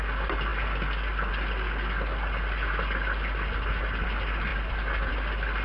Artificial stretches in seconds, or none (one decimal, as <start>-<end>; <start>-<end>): none